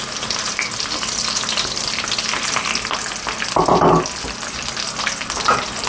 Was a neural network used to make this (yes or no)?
no